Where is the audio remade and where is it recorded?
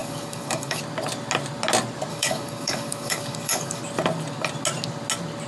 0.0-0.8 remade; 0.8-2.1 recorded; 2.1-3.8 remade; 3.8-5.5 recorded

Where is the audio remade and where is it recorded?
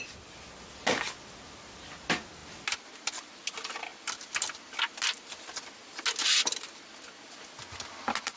0.0-8.4 recorded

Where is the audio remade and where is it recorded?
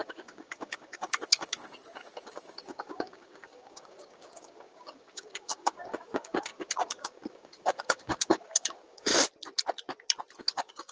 0.0-9.1 remade; 9.1-10.4 recorded; 10.4-10.9 remade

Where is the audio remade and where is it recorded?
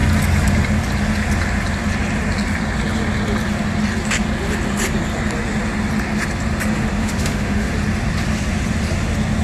0.0-7.0 recorded; 7.0-7.7 remade; 7.7-9.4 recorded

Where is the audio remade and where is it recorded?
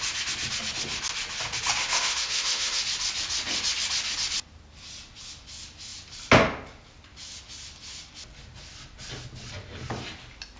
0.0-1.8 recorded; 1.8-2.8 remade; 2.8-10.6 recorded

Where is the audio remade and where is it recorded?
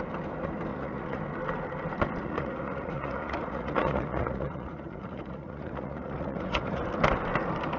0.0-0.7 recorded; 0.7-1.2 remade; 1.2-2.2 recorded; 2.2-6.8 remade; 6.8-7.8 recorded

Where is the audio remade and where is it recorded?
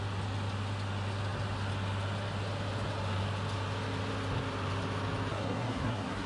0.0-5.3 recorded; 5.3-6.3 remade